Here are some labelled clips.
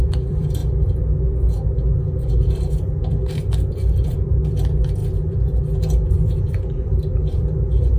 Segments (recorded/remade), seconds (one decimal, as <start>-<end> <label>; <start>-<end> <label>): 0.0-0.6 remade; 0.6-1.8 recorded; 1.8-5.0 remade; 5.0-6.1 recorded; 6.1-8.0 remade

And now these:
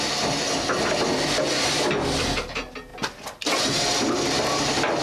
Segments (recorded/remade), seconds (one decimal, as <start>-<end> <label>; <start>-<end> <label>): 0.0-5.0 recorded

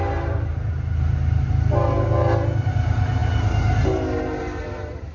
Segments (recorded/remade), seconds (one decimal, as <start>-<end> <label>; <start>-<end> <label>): 0.0-5.1 recorded

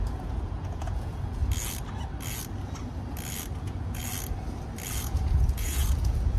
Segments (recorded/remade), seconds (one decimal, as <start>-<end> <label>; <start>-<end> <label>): 0.0-1.4 remade; 1.4-3.6 recorded; 3.6-4.0 remade; 4.0-5.0 recorded; 5.0-6.4 remade

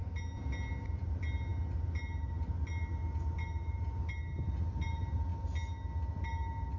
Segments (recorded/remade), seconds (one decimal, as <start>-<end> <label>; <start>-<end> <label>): 0.0-6.8 recorded